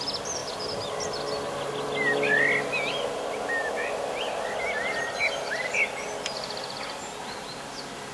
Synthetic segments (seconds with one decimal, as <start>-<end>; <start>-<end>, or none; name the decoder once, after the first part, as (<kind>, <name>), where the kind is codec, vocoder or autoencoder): none

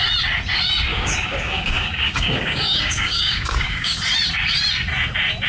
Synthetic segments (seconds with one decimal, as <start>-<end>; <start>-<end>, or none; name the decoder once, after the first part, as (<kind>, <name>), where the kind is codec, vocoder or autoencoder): 0.9-4.0 (codec, DAC)